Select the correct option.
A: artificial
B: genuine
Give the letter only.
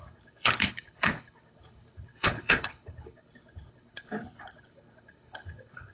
A